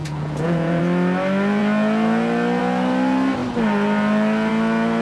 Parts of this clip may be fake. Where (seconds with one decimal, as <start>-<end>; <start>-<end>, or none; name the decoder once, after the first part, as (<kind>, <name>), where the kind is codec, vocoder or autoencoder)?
0.0-0.8 (vocoder, Vocos)